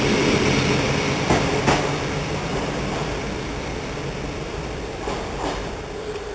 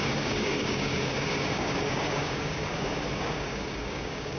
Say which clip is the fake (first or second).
second